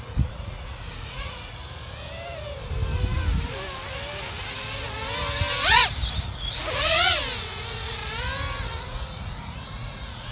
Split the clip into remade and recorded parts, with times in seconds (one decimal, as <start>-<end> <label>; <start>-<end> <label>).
0.0-1.6 remade; 1.6-6.1 recorded; 6.1-8.0 remade; 8.0-8.8 recorded; 8.8-10.3 remade

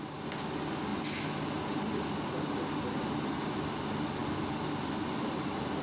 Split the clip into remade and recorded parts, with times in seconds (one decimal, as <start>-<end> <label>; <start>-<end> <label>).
0.0-5.8 recorded

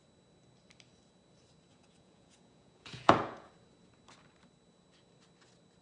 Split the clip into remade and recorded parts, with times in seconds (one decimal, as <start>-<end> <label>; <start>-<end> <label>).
0.0-1.7 recorded; 1.7-3.5 remade; 3.5-5.8 recorded

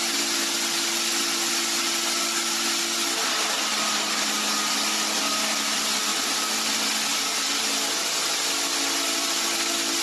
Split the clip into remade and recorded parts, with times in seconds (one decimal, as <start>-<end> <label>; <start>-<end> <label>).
0.0-10.0 recorded

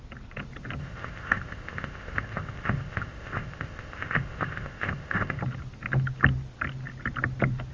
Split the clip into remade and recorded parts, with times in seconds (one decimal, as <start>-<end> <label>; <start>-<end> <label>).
0.0-0.8 recorded; 0.8-5.4 remade; 5.4-7.7 recorded